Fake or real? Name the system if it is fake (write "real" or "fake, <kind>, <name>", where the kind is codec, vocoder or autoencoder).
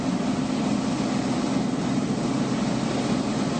real